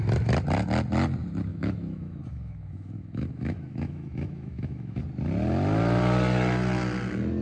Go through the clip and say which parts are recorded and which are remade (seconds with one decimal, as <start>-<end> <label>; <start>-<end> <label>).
0.0-1.5 recorded; 1.5-5.0 remade; 5.0-7.4 recorded